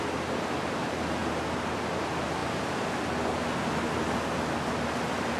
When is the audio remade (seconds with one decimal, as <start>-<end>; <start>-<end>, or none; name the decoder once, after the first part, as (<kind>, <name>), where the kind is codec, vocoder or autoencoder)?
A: none